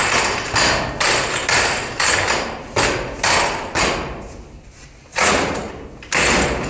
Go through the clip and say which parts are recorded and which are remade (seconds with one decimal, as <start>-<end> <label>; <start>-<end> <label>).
0.0-5.1 recorded; 5.1-5.7 remade; 5.7-6.7 recorded